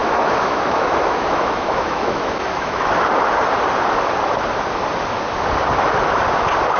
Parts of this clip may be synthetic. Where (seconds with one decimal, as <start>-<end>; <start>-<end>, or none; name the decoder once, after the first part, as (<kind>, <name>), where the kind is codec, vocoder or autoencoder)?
0.0-2.9 (autoencoder, DAC-VAE)